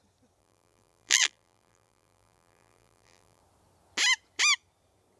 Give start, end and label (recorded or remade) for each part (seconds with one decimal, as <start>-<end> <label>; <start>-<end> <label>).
0.0-0.4 recorded; 0.4-3.4 remade; 3.4-5.2 recorded